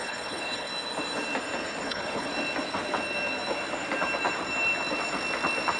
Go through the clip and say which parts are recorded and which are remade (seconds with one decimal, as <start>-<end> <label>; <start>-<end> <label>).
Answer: 0.0-0.7 remade; 0.7-1.8 recorded; 1.8-2.3 remade; 2.3-5.8 recorded